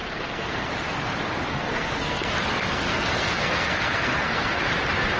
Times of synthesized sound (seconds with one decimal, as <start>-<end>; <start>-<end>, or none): 0.0-0.7; 1.5-2.3; 2.7-4.6